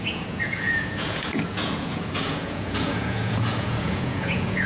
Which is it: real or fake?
fake